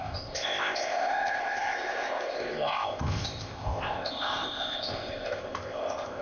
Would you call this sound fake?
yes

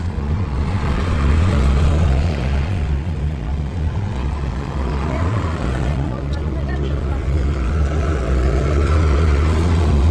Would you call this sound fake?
yes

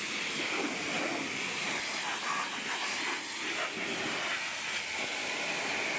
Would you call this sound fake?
no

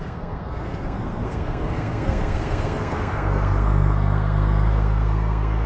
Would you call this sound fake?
yes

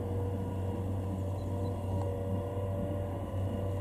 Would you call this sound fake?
no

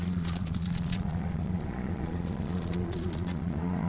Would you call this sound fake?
yes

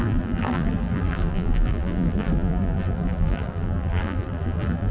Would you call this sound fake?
yes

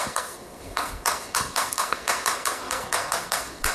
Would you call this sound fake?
yes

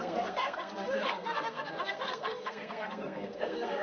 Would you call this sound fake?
yes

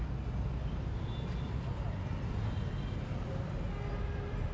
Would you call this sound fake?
no